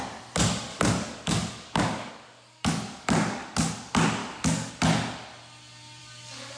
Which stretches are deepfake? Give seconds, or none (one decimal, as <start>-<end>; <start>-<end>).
0.7-3.7; 4.2-4.7; 6.0-6.6